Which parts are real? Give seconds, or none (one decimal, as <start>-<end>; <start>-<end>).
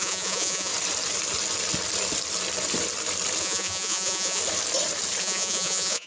0.7-3.4; 4.4-5.2